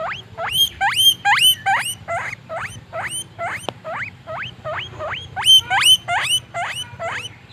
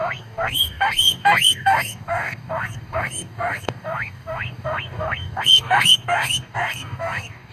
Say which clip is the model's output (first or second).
second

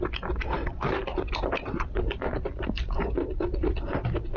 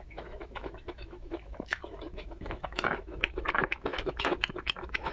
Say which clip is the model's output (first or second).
second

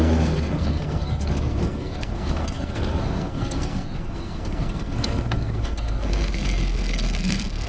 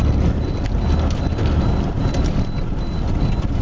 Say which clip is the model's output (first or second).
first